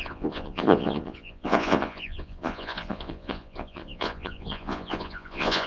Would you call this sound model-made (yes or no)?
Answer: yes